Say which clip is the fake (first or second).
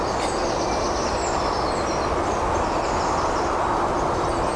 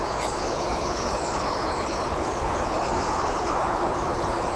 second